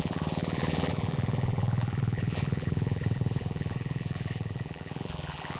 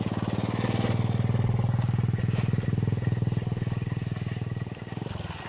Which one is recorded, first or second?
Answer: second